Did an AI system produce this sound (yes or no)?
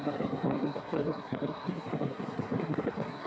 yes